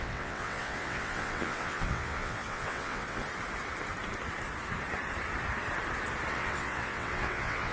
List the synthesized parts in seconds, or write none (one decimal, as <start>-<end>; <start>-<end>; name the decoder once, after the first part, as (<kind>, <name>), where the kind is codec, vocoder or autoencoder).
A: 0.0-3.2 (vocoder, WaveNeXt); 6.3-7.7